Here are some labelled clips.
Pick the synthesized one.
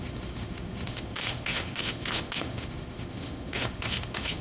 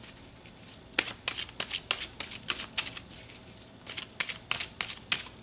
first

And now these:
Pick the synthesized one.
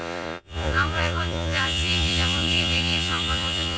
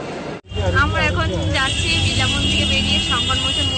first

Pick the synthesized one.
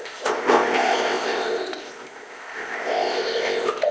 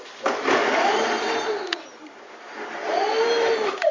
first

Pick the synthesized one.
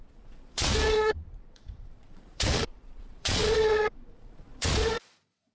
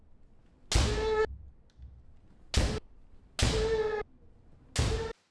first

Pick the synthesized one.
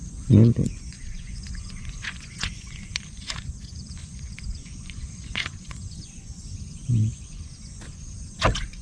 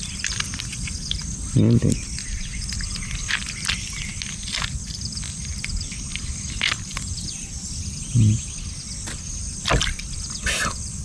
first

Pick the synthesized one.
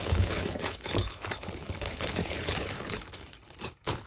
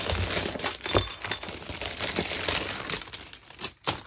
first